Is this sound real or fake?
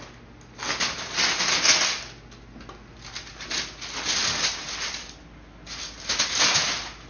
real